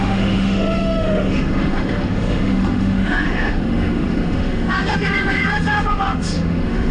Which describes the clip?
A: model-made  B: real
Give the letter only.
A